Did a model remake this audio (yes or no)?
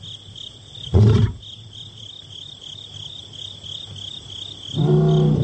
no